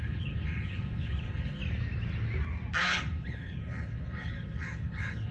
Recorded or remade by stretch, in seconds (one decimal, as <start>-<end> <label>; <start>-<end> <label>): 0.0-1.6 remade; 1.6-2.8 recorded; 2.8-5.3 remade